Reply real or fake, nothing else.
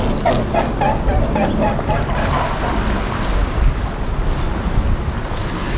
real